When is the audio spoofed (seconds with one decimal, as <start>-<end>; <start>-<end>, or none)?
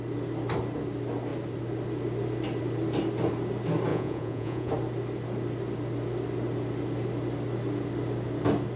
3.9-4.7